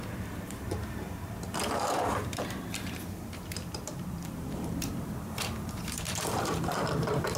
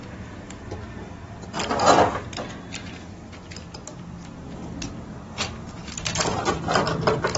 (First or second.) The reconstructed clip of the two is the first